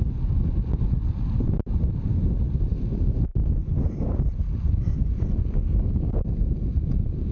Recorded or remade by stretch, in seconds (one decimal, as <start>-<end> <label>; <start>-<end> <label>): 0.0-7.3 recorded